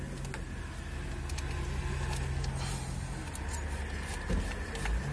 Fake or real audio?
real